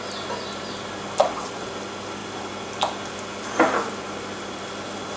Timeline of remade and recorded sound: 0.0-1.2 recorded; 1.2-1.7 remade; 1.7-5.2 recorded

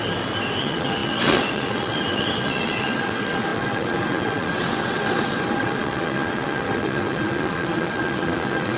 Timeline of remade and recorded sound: 0.0-0.6 recorded; 0.6-8.8 remade

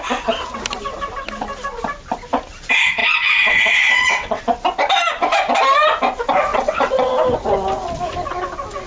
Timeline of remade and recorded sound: 0.0-3.0 recorded; 3.0-4.4 remade; 4.4-6.5 recorded; 6.5-7.1 remade; 7.1-8.9 recorded

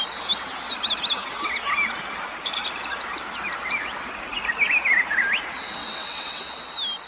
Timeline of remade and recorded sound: 0.0-5.8 recorded; 5.8-6.4 remade; 6.4-7.1 recorded

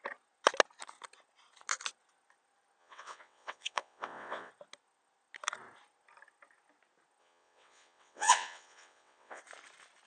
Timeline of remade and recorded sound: 0.0-2.8 recorded; 2.8-4.5 remade; 4.5-7.2 recorded; 7.2-9.4 remade; 9.4-10.1 recorded

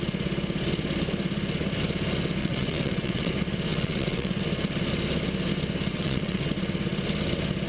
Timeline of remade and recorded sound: 0.0-2.4 recorded; 2.4-3.3 remade; 3.3-3.7 recorded; 3.7-4.4 remade; 4.4-5.9 recorded; 5.9-6.5 remade; 6.5-7.7 recorded